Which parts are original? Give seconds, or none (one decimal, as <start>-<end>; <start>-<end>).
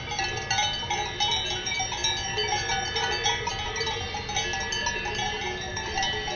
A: 0.0-6.4